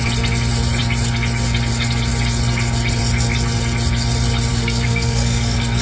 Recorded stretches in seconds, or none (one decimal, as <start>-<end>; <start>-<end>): 0.0-4.5

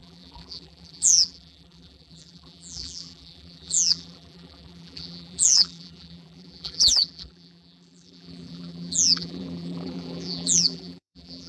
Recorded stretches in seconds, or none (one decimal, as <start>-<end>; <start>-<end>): none